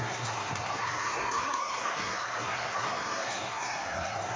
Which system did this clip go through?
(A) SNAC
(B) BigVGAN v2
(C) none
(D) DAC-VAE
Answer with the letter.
A